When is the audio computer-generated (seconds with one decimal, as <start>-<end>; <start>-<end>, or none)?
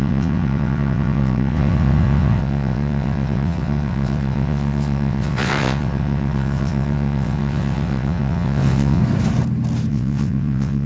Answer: 0.0-9.0; 9.9-10.9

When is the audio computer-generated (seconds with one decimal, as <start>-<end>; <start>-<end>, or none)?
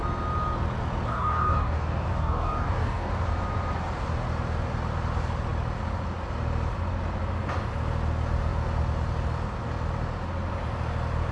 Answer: 1.1-3.1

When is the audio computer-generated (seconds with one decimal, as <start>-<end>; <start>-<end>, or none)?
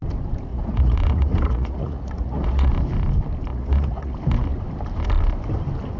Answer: 0.5-2.7; 3.5-4.1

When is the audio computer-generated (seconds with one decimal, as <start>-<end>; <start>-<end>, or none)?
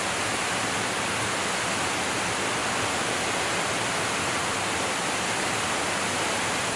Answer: none